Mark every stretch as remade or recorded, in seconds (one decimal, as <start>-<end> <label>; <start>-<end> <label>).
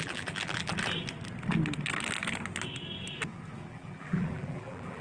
0.0-0.7 remade; 0.7-3.7 recorded; 3.7-5.0 remade